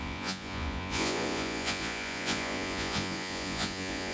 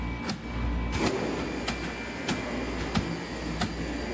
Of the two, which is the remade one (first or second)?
first